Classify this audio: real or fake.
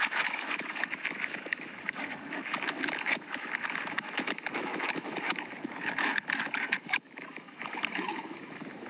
fake